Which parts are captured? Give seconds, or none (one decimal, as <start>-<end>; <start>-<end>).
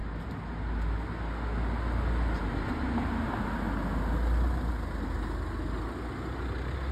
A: 0.0-6.9